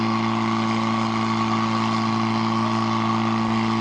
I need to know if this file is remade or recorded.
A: recorded